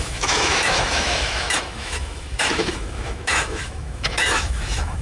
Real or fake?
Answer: fake